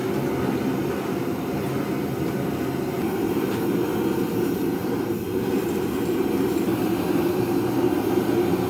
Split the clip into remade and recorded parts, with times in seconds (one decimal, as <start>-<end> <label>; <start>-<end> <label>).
0.0-4.8 recorded; 4.8-6.0 remade; 6.0-6.7 recorded; 6.7-7.7 remade; 7.7-8.7 recorded